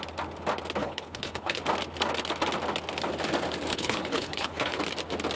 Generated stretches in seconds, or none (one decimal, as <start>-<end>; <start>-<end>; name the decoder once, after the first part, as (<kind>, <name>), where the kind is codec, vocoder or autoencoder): 0.8-1.6 (codec, HILCodec); 3.7-4.8